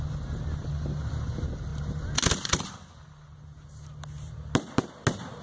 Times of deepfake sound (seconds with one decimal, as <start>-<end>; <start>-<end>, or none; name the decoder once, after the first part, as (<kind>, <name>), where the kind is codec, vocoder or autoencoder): none